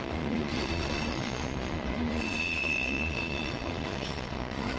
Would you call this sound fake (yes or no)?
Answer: yes